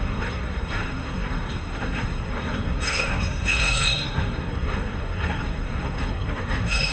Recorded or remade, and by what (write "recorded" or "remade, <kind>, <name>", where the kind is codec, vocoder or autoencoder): remade, codec, SNAC